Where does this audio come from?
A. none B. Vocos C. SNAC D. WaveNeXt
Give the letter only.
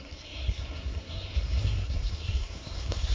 C